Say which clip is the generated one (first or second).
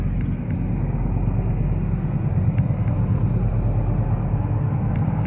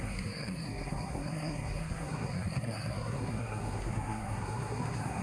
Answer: second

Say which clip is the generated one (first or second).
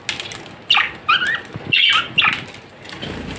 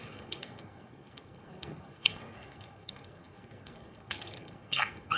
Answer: second